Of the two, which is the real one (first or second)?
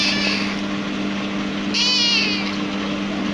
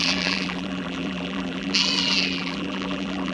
first